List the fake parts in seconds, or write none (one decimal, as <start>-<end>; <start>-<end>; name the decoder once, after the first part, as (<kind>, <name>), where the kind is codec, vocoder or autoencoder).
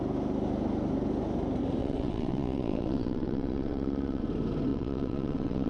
1.8-4.2 (vocoder, WaveNeXt); 4.7-5.7